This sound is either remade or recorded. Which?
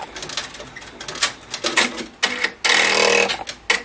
recorded